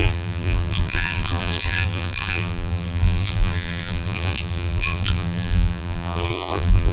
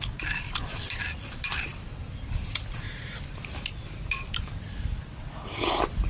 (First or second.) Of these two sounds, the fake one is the first